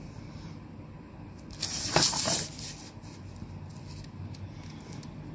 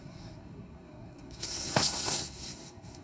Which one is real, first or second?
first